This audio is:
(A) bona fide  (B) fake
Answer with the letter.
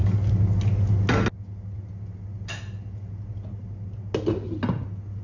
A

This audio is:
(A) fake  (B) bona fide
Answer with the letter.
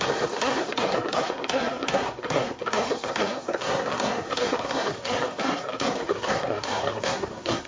A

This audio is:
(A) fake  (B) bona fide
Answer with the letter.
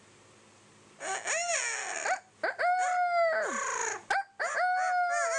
B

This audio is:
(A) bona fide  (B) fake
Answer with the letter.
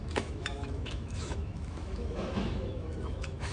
B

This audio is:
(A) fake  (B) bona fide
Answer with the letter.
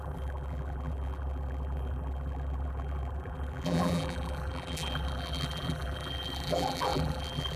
A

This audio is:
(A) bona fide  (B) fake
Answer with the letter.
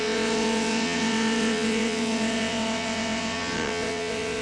B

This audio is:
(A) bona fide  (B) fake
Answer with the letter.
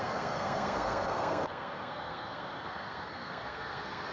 B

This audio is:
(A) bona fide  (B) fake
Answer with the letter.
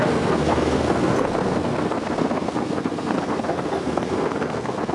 B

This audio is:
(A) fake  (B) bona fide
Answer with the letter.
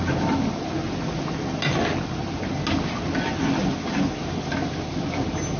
B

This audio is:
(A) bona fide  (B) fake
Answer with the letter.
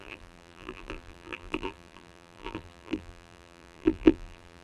B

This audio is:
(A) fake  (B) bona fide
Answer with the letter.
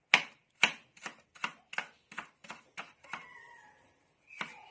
B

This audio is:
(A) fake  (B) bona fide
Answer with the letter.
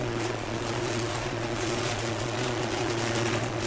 A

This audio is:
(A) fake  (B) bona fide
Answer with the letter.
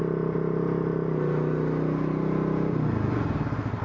B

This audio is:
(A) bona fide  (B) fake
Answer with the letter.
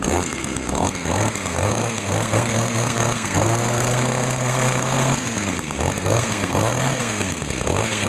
B